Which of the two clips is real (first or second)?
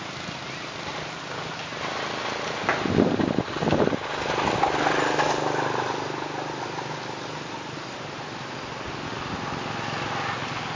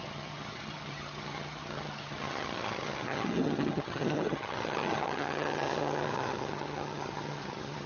first